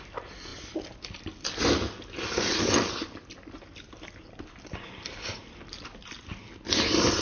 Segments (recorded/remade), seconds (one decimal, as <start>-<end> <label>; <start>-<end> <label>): 0.0-7.2 recorded